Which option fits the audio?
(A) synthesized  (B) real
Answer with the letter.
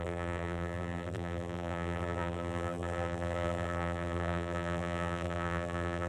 A